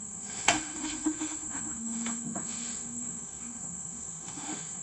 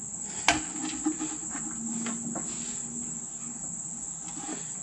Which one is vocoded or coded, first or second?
first